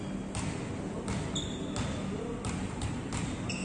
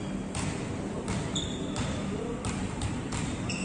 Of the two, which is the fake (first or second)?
second